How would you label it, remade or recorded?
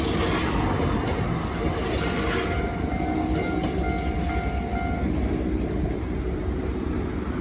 recorded